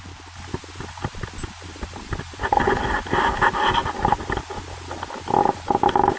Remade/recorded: recorded